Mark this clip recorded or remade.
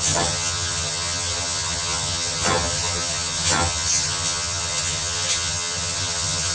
remade